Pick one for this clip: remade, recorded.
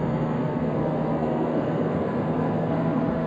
remade